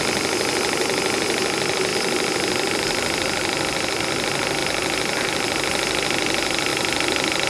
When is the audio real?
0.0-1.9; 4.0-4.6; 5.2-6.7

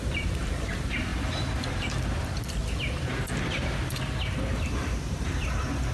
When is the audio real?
1.1-4.6

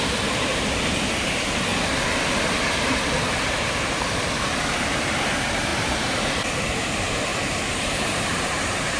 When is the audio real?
1.7-2.6